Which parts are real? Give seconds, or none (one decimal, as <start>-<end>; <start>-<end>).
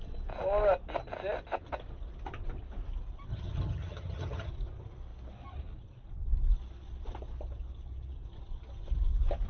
0.0-3.3; 4.5-9.5